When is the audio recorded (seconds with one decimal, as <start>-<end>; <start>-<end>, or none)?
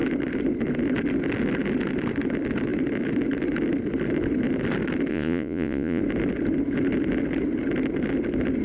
0.0-5.1; 6.0-8.6